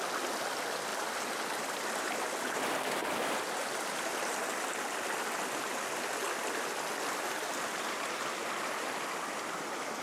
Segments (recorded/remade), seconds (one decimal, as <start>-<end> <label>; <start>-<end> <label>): 0.0-10.0 recorded